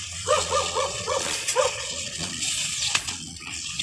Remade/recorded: remade